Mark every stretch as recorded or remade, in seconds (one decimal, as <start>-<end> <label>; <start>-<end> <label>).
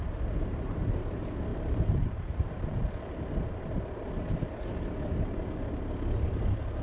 0.0-1.5 recorded; 1.5-3.8 remade; 3.8-6.8 recorded